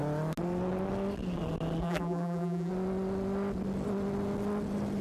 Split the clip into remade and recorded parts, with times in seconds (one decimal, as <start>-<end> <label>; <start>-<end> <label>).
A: 0.0-1.8 recorded; 1.8-2.7 remade; 2.7-5.0 recorded